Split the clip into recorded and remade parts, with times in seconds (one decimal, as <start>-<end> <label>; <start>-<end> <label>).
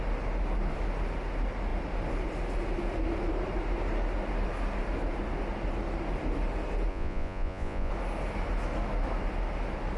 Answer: 0.0-6.9 recorded; 6.9-7.9 remade; 7.9-10.0 recorded